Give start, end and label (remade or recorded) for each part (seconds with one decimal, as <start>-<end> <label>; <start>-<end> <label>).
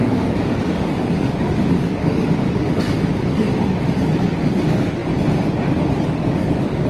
0.0-3.5 remade; 3.5-4.4 recorded; 4.4-5.0 remade; 5.0-6.0 recorded; 6.0-6.9 remade